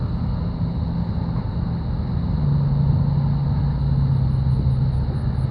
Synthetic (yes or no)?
no